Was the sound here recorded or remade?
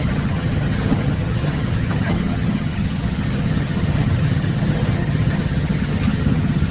remade